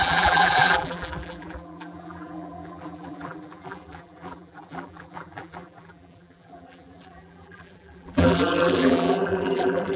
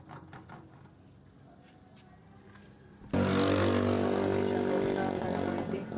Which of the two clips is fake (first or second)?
first